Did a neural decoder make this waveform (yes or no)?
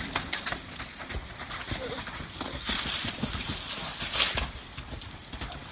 no